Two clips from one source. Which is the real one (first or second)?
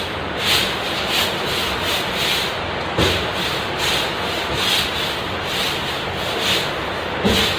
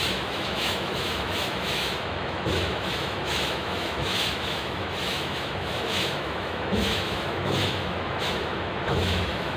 first